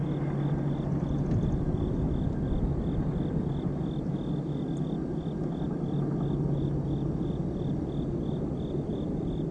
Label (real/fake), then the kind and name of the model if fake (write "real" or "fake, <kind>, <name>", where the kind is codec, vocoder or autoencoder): real